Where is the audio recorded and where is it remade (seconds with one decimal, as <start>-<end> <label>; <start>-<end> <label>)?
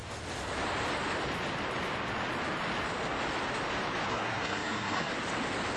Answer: 0.0-4.1 recorded; 4.1-5.1 remade; 5.1-5.8 recorded